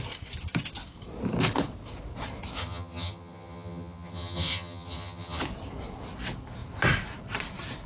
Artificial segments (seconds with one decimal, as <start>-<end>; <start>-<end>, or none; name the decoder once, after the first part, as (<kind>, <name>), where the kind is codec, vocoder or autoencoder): 2.6-5.4 (vocoder, HiFi-GAN)